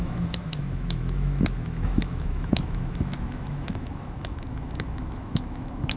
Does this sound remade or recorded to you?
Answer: remade